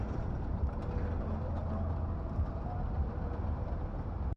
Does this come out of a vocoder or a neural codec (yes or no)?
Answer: no